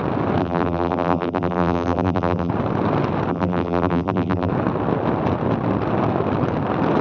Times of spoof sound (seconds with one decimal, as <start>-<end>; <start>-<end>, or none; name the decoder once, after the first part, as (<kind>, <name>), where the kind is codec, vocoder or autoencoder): 0.4-2.5 (vocoder, BigVGAN v2); 3.3-4.5